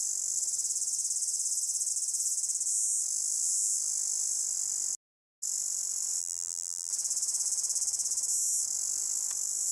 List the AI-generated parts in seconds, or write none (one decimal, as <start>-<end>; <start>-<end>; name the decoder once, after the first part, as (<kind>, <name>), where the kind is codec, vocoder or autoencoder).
6.2-6.9 (vocoder, BigVGAN v2)